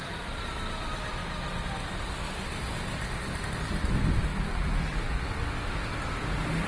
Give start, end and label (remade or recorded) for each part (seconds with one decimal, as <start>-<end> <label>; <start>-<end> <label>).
0.0-4.3 recorded; 4.3-5.2 remade; 5.2-6.7 recorded